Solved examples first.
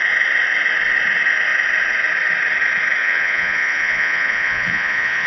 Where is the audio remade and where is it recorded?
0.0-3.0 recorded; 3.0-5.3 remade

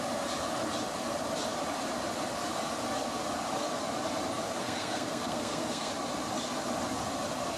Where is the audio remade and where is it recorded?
0.0-4.6 recorded; 4.6-5.9 remade; 5.9-7.6 recorded

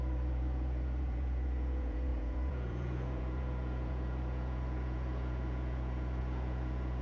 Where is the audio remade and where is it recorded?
0.0-7.0 remade

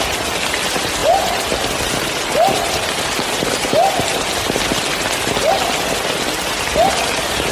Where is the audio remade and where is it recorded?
0.0-7.5 recorded

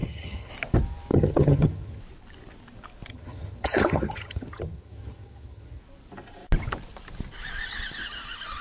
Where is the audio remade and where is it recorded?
0.0-0.5 remade; 0.5-1.1 recorded; 1.1-2.0 remade; 2.0-3.1 recorded; 3.1-5.8 remade; 5.8-8.6 recorded

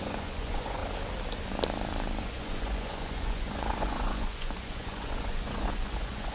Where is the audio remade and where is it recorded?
0.0-0.8 remade; 0.8-2.2 recorded; 2.2-6.3 remade